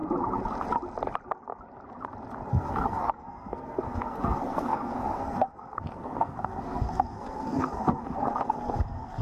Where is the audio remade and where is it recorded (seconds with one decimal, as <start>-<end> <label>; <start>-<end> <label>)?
0.0-2.5 recorded; 2.5-9.2 remade